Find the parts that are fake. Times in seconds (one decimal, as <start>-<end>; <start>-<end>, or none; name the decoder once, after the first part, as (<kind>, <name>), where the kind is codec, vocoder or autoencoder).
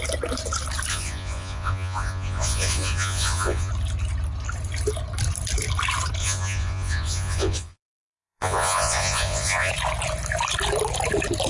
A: 0.9-3.7 (vocoder, Vocos); 6.2-9.7